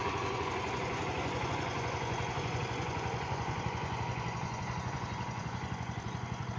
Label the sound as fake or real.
fake